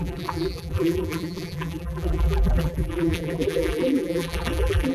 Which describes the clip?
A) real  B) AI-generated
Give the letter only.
B